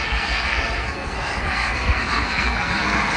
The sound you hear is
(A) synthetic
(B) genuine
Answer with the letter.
A